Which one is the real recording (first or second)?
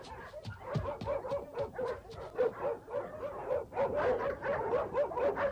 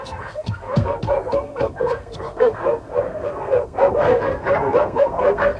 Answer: first